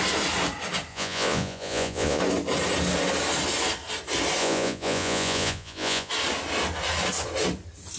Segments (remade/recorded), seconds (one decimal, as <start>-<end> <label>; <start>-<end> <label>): 0.0-0.9 recorded; 0.9-2.2 remade; 2.2-4.4 recorded; 4.4-6.1 remade; 6.1-8.0 recorded